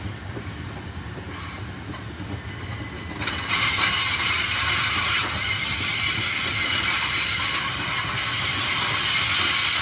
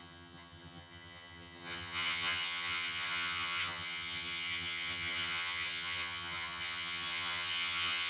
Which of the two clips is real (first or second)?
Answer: first